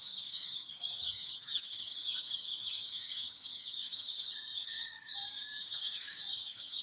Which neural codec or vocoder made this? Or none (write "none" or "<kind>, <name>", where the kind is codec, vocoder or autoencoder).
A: codec, DAC